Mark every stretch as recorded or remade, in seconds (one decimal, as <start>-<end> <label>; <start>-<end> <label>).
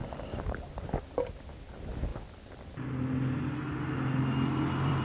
0.0-5.0 recorded